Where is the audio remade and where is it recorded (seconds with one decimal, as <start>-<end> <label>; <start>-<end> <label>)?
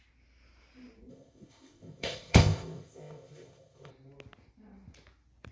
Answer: 0.0-1.1 recorded; 1.1-3.9 remade; 3.9-5.5 recorded